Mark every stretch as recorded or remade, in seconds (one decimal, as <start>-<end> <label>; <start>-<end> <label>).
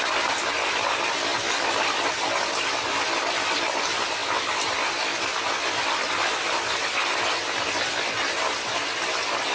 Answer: 0.0-9.5 recorded